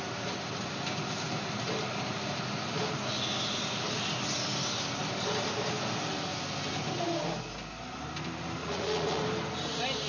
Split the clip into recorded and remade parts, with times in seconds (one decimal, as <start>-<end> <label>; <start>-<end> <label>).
0.0-8.6 recorded; 8.6-9.2 remade; 9.2-10.1 recorded